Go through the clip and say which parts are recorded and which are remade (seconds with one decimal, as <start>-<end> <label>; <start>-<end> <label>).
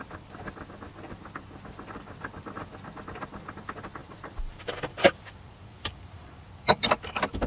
0.0-4.0 recorded; 4.0-6.9 remade; 6.9-7.5 recorded